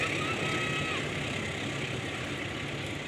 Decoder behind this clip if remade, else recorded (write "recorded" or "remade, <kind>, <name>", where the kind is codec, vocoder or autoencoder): recorded